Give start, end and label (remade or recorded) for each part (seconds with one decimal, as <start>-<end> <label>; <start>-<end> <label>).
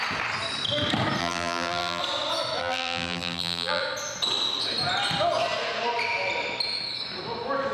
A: 0.0-1.2 recorded; 1.2-2.0 remade; 2.0-2.6 recorded; 2.6-3.8 remade; 3.8-7.7 recorded